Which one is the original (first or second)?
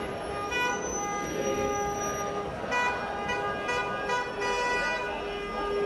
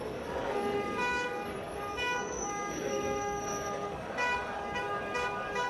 first